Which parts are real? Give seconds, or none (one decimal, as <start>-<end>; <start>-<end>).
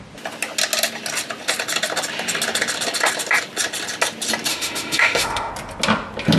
0.0-4.5; 5.5-6.4